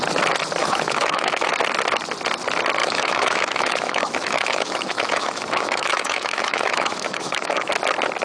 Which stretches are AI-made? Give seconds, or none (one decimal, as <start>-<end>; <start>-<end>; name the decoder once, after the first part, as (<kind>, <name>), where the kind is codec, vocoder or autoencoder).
0.6-1.5 (autoencoder, DAC-VAE); 2.8-7.7